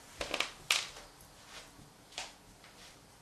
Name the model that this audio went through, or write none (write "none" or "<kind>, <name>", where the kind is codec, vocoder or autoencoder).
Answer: none